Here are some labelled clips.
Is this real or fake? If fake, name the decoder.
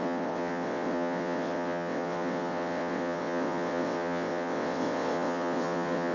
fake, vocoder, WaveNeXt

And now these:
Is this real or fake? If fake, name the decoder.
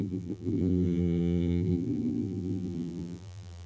fake, vocoder, BigVGAN v2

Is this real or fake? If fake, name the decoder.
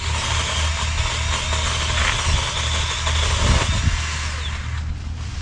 real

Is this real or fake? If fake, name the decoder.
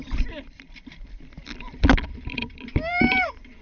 fake, vocoder, BigVGAN v2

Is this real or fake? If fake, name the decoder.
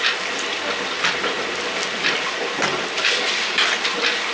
real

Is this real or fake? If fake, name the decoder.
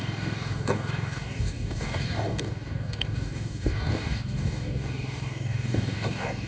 fake, codec, DAC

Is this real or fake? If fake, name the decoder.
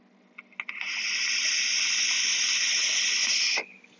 real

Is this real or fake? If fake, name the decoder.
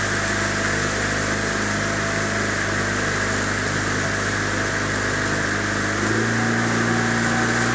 real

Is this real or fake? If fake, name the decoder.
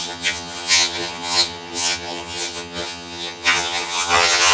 fake, vocoder, HiFi-GAN